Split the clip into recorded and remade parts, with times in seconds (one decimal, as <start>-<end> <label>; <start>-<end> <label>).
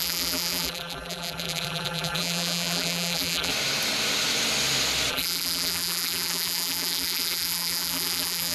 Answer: 0.0-3.5 remade; 3.5-5.1 recorded; 5.1-8.5 remade